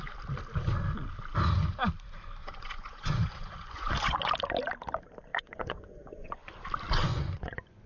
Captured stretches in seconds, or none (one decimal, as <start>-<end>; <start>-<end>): 0.0-2.4; 4.3-5.3; 6.6-7.1